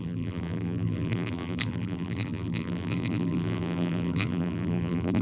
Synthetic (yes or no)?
yes